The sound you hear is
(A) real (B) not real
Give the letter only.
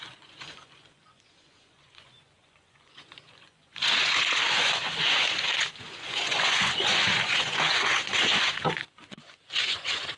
B